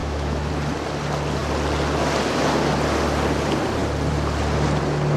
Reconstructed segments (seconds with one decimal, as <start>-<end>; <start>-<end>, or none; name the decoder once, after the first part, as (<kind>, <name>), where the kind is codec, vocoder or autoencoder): 0.0-0.5 (autoencoder, DAC-VAE)